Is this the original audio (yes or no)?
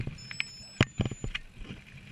yes